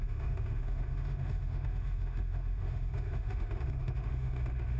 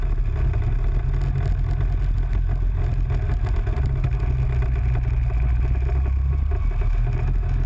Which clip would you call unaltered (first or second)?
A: second